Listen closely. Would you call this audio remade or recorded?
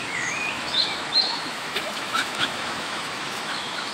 remade